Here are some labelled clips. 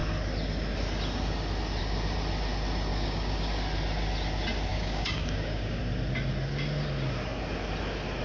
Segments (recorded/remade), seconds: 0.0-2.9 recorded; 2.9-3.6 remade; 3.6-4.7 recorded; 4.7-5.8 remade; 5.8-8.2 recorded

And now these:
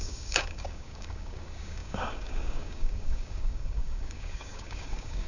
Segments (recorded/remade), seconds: 0.0-5.3 remade

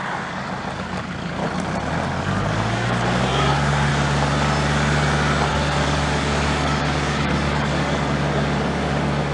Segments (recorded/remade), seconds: 0.0-1.4 remade; 1.4-2.2 recorded; 2.2-3.9 remade; 3.9-5.5 recorded; 5.5-9.3 remade